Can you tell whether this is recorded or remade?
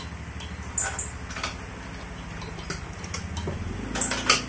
recorded